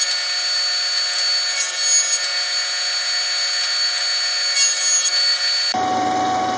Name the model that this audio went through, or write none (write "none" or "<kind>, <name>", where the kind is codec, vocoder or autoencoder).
none